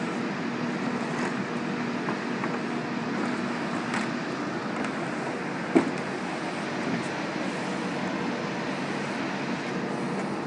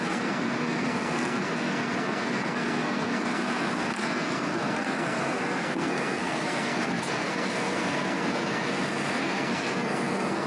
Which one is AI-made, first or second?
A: second